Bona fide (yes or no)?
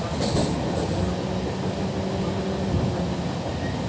yes